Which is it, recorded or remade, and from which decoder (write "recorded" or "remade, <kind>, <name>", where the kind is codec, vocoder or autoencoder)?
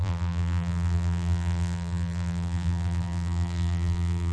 remade, vocoder, BigVGAN v2